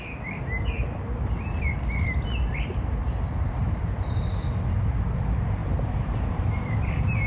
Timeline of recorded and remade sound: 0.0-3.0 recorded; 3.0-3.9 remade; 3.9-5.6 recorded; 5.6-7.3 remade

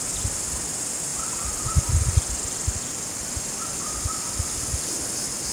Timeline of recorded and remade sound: 0.0-5.5 recorded

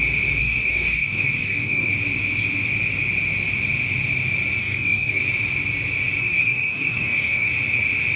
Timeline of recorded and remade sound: 0.0-0.4 recorded; 0.4-1.9 remade; 1.9-4.6 recorded; 4.6-5.2 remade; 5.2-6.2 recorded; 6.2-7.5 remade; 7.5-8.2 recorded

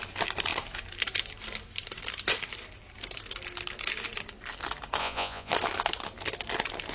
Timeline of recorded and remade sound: 0.0-5.0 recorded; 5.0-5.5 remade; 5.5-6.9 recorded